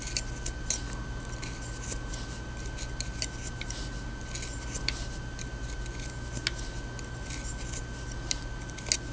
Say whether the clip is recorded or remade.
recorded